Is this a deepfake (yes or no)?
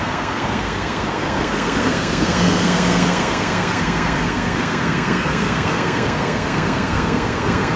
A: yes